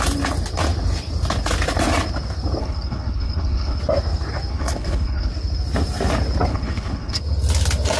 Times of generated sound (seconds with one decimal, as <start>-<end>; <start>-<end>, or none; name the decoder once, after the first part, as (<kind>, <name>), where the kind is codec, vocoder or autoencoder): 2.6-3.8 (codec, HILCodec); 4.5-5.3; 6.5-7.2